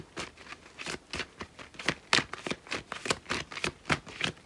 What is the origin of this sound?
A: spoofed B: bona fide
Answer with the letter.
B